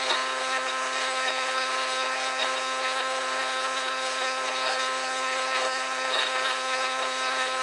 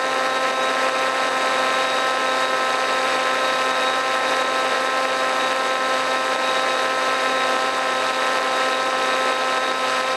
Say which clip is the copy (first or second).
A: first